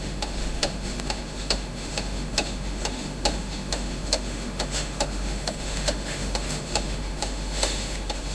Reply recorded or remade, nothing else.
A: remade